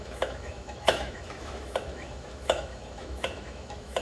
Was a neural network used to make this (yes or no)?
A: yes